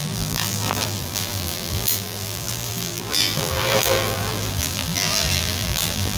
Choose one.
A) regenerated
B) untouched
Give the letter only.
A